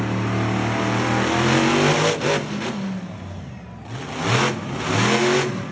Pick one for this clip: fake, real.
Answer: real